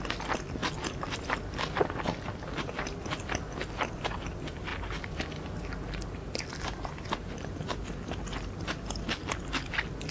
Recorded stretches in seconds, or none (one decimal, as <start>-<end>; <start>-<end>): 0.0-10.1